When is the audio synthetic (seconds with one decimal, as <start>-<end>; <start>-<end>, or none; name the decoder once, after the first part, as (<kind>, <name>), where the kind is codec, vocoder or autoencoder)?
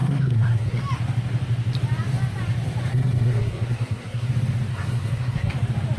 0.0-0.8 (codec, SNAC); 2.9-4.3; 4.7-5.5